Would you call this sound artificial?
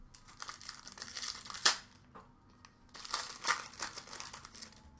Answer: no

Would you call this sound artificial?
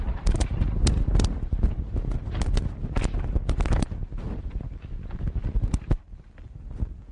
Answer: no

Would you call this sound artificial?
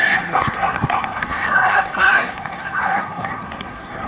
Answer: yes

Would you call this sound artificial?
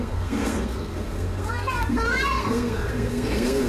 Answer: yes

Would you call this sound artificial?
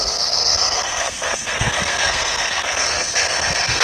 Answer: yes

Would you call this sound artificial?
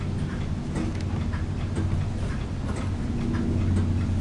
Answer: no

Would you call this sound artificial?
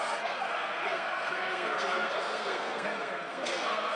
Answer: yes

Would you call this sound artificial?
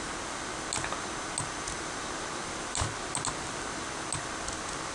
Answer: no